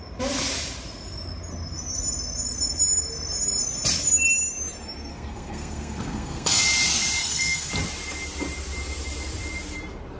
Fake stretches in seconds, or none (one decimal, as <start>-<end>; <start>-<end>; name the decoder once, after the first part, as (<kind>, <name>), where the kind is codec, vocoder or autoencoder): 5.1-6.6 (codec, SNAC); 7.2-7.7

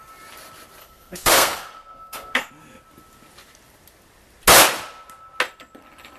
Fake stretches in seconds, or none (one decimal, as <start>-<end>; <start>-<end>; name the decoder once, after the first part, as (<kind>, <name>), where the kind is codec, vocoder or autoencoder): 0.8-2.5 (codec, SNAC)

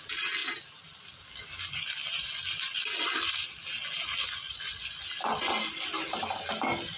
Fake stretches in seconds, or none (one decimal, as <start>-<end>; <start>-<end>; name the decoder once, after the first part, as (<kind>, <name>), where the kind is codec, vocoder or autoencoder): none

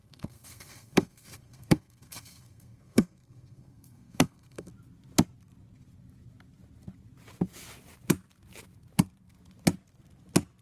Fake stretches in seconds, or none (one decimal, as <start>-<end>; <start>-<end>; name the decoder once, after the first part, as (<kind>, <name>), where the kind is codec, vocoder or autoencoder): 0.0-4.7 (codec, SNAC)

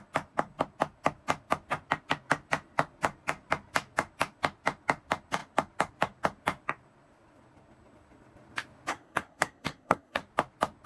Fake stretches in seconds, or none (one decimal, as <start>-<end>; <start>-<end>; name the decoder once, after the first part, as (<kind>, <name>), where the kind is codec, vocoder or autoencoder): 8.9-10.2 (codec, SNAC)